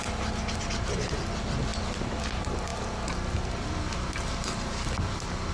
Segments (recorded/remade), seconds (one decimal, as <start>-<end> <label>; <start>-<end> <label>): 0.0-5.5 recorded